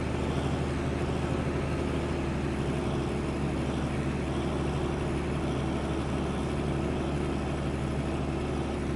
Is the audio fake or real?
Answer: real